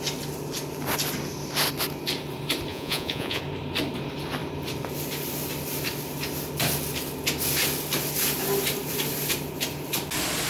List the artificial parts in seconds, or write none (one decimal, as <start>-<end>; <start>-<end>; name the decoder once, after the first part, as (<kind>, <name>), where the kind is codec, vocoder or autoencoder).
2.7-3.4 (vocoder, Vocos)